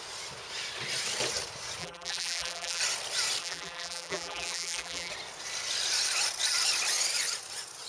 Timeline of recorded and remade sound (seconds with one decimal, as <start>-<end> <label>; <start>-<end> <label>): 0.0-1.8 recorded; 1.8-2.8 remade; 2.8-3.4 recorded; 3.4-5.1 remade; 5.1-7.9 recorded